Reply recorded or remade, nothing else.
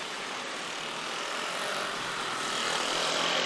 remade